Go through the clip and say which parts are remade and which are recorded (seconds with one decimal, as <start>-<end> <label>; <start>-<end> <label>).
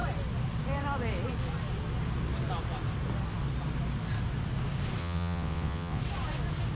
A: 0.0-5.0 recorded; 5.0-6.0 remade; 6.0-6.8 recorded